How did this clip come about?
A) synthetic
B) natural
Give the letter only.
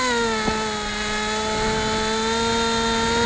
B